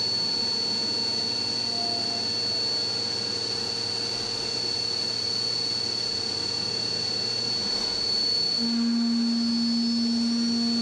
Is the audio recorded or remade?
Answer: recorded